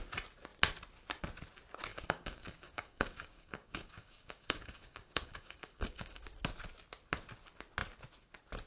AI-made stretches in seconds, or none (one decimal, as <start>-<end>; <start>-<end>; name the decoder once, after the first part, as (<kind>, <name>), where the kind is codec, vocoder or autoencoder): 1.9-6.2 (codec, DAC)

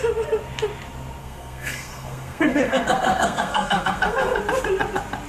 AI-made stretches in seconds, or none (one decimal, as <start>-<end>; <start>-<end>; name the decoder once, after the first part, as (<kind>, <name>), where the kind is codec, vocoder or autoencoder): 1.2-4.4 (codec, SNAC)

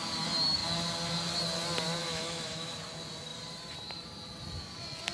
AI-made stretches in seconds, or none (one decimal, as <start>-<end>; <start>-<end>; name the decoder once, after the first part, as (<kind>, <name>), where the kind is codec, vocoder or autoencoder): 2.0-2.7 (autoencoder, DAC-VAE)

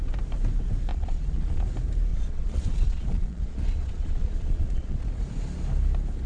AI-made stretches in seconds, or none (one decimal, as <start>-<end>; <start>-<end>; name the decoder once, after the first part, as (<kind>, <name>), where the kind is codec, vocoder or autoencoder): 0.9-1.6 (vocoder, Vocos); 2.1-5.1

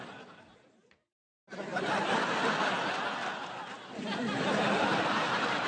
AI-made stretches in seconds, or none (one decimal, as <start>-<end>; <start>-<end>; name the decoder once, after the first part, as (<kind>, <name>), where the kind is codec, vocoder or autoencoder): 0.0-5.7 (vocoder, BigVGAN v2)